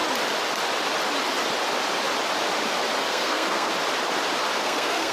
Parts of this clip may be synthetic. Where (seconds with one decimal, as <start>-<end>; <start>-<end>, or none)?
3.1-3.7; 4.6-5.1